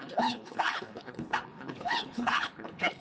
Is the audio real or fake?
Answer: fake